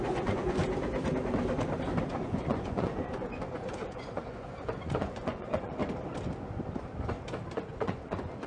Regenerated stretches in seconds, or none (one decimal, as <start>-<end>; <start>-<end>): 0.0-0.6; 2.1-5.8; 7.5-8.5